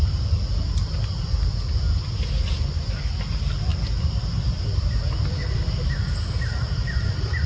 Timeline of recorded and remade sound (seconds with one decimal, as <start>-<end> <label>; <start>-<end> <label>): 0.0-7.5 recorded